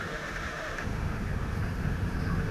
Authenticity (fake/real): fake